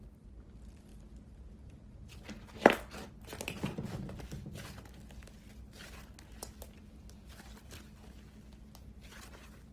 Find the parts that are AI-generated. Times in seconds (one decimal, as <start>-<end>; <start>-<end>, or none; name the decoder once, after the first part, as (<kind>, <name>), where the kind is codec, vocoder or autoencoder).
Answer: none